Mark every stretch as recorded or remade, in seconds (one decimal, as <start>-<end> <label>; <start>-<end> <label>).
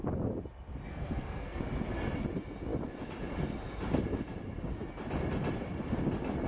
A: 0.0-0.9 recorded; 0.9-1.6 remade; 1.6-6.5 recorded